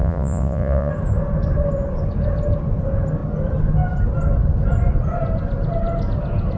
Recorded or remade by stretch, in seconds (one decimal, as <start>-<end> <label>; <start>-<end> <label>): 0.0-0.9 remade; 0.9-6.6 recorded